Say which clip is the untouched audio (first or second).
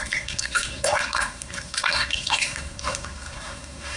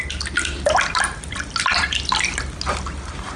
second